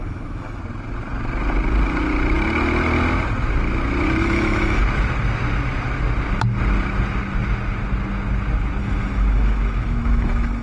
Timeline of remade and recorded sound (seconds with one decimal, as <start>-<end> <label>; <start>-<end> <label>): 0.0-0.6 remade; 0.6-4.2 recorded; 4.2-4.8 remade; 4.8-8.8 recorded; 8.8-10.6 remade